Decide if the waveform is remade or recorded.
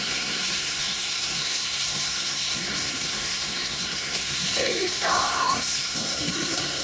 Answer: remade